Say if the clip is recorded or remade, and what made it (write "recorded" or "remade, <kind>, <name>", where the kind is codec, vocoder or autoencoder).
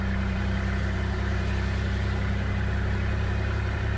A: remade, vocoder, BigVGAN v2